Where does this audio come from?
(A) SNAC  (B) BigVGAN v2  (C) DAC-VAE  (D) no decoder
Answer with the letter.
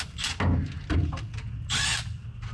D